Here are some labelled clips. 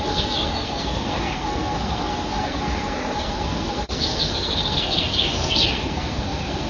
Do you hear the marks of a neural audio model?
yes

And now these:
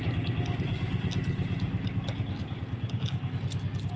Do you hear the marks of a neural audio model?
no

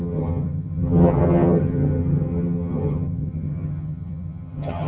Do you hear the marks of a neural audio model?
yes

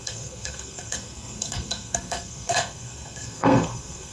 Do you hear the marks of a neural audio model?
yes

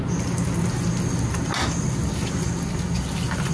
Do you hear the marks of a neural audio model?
no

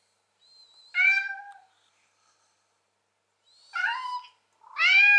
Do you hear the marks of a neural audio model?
no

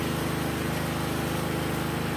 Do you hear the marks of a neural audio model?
no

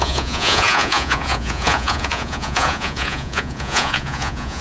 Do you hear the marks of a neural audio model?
yes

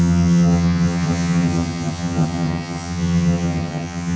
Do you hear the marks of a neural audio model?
yes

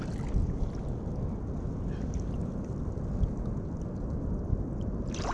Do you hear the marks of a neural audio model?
no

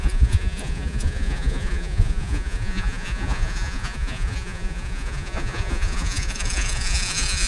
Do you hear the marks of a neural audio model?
yes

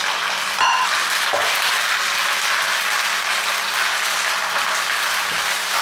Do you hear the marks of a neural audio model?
no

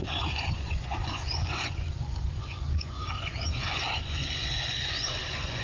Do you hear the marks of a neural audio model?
yes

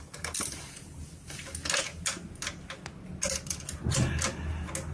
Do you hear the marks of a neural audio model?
no